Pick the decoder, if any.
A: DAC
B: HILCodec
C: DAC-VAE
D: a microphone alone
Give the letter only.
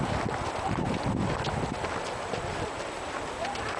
D